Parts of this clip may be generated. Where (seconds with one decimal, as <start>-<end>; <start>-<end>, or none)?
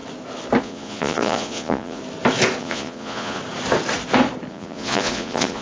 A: 0.6-2.0; 2.6-3.4; 4.5-5.6